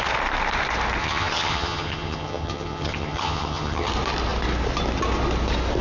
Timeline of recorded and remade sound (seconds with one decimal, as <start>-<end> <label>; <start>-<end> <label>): 0.0-1.0 recorded; 1.0-3.9 remade; 3.9-5.8 recorded